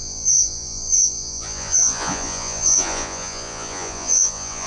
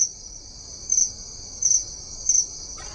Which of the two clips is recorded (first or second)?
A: second